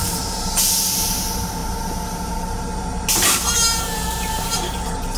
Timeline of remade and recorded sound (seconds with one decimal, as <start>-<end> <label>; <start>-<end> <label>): 0.0-5.2 remade